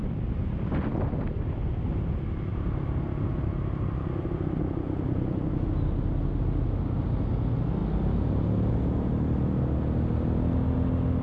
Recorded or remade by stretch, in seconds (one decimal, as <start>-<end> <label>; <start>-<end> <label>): 0.0-11.2 recorded